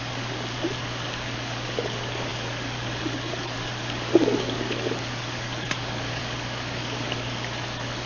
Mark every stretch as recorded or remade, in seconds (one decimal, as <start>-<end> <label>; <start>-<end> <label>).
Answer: 0.0-8.1 remade